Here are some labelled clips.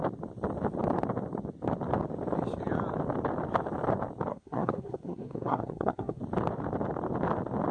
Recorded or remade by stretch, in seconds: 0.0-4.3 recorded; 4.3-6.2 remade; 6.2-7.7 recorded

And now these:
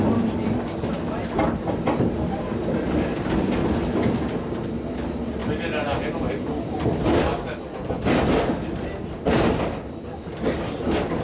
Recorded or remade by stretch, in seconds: 0.0-11.2 recorded

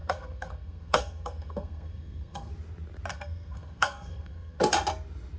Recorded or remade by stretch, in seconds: 0.0-2.5 remade; 2.5-3.1 recorded; 3.1-4.6 remade; 4.6-5.4 recorded

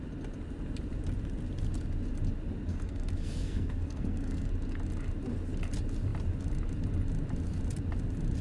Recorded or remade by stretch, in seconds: 0.0-2.7 recorded; 2.7-4.5 remade; 4.5-8.4 recorded

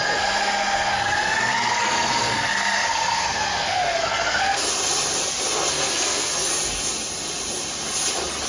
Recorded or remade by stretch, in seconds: 0.0-4.7 remade; 4.7-5.7 recorded; 5.7-6.5 remade; 6.5-8.5 recorded

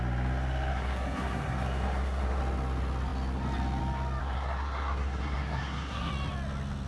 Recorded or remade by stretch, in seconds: 0.0-0.7 recorded; 0.7-2.4 remade; 2.4-4.2 recorded; 4.2-6.1 remade; 6.1-6.9 recorded